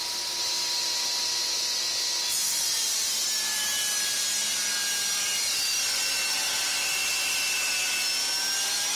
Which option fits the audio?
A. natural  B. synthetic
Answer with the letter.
A